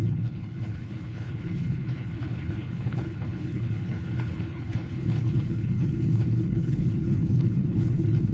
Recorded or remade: remade